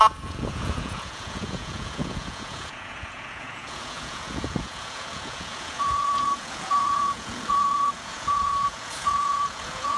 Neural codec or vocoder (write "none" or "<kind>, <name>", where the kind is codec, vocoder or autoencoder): vocoder, Vocos